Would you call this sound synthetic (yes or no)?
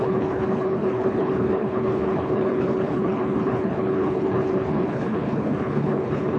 yes